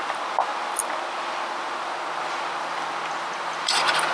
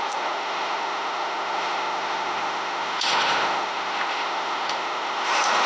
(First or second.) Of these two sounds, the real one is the first